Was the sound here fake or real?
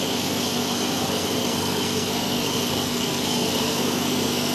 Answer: fake